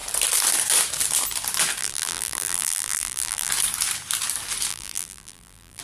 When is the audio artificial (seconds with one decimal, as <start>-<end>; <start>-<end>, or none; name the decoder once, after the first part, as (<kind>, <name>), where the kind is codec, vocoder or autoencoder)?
1.8-3.5 (vocoder, BigVGAN v2); 4.7-5.8